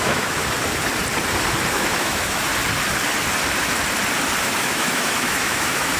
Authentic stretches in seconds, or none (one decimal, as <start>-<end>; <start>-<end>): 0.4-1.7; 2.5-4.4